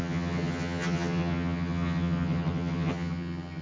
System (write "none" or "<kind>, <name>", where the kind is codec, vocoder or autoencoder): vocoder, HiFi-GAN